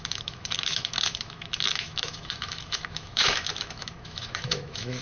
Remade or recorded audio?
remade